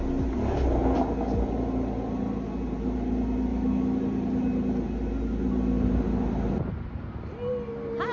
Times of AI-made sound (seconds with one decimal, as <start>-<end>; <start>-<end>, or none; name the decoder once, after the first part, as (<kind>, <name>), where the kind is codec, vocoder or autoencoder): 3.5-4.0 (autoencoder, DAC-VAE)